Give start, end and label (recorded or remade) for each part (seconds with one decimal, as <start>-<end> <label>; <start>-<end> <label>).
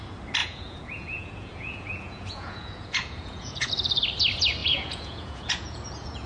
0.0-0.4 recorded; 0.4-3.7 remade; 3.7-4.6 recorded; 4.6-6.3 remade